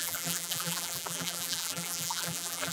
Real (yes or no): no